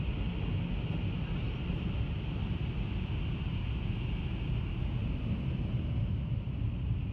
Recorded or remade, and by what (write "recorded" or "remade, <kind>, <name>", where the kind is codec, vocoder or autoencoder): recorded